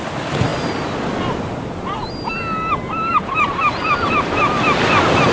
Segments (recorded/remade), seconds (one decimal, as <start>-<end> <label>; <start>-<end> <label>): 0.0-3.1 recorded; 3.1-4.0 remade; 4.0-5.3 recorded